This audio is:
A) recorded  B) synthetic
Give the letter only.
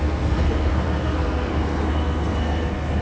B